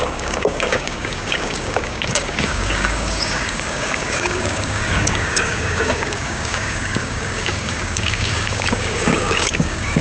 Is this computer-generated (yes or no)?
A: yes